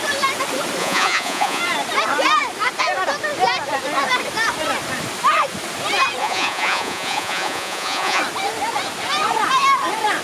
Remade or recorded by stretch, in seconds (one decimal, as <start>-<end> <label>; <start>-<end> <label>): 0.0-0.8 recorded; 0.8-1.6 remade; 1.6-6.2 recorded; 6.2-8.2 remade; 8.2-10.2 recorded

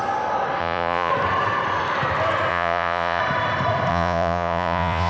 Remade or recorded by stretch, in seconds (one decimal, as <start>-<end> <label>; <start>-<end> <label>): 0.0-0.6 recorded; 0.6-1.1 remade; 1.1-2.5 recorded; 2.5-3.2 remade; 3.2-3.9 recorded; 3.9-5.1 remade

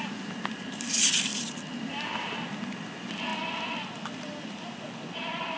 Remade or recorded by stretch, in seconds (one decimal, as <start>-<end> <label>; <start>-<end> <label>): 0.0-5.6 recorded

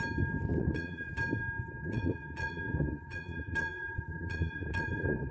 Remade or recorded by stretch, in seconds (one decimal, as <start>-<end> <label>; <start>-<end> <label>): 0.0-0.5 recorded; 0.5-1.1 remade; 1.1-1.8 recorded; 1.8-5.3 remade